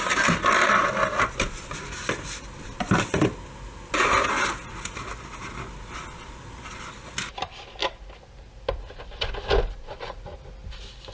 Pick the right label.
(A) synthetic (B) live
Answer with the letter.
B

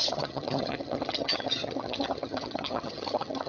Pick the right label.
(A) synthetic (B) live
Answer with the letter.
A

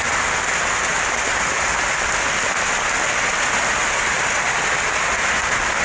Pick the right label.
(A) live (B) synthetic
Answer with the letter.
A